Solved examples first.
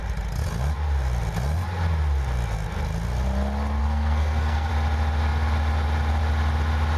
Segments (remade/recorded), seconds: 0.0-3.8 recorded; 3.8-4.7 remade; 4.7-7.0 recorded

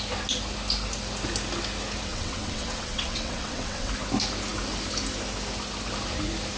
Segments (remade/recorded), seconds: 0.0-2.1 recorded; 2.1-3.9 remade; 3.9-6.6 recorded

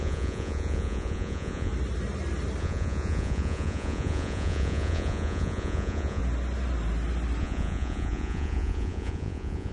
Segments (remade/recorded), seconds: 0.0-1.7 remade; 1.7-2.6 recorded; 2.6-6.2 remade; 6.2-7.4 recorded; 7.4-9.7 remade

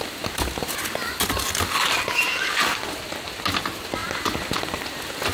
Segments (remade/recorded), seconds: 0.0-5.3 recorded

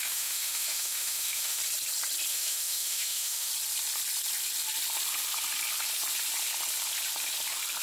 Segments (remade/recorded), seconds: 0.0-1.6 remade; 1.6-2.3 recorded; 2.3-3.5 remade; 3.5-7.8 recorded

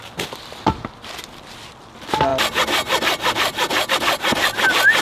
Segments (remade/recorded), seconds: 0.0-5.0 recorded